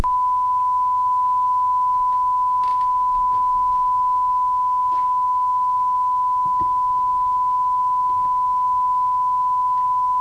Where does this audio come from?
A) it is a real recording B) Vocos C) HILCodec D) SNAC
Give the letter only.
A